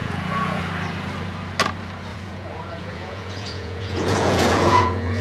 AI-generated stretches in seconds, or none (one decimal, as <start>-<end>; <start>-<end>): 0.0-0.6; 2.1-5.2